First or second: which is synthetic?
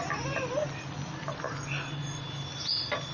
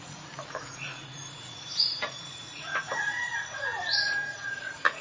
second